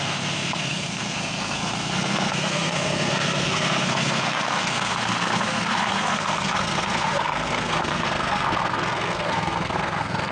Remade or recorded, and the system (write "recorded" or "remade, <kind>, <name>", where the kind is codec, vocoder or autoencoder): remade, codec, SNAC